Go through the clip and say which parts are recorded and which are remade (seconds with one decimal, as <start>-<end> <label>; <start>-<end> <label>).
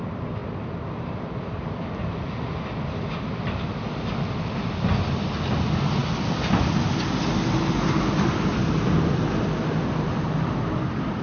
0.0-11.2 recorded